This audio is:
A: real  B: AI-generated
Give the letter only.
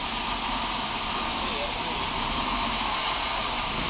A